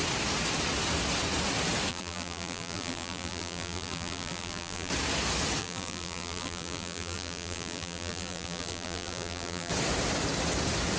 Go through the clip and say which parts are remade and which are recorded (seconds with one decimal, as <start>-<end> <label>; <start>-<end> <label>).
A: 0.0-1.9 recorded; 1.9-4.9 remade; 4.9-5.6 recorded; 5.6-9.7 remade; 9.7-11.0 recorded